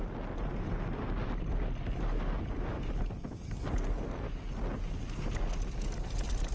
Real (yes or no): yes